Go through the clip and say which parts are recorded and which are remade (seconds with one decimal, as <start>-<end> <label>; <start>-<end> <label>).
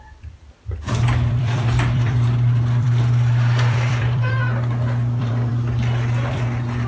0.0-4.4 remade; 4.4-5.0 recorded; 5.0-5.5 remade; 5.5-6.3 recorded; 6.3-6.9 remade